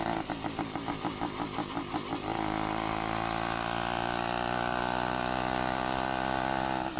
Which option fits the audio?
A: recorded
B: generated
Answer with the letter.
A